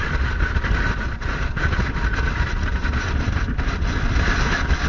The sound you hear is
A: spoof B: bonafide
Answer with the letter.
B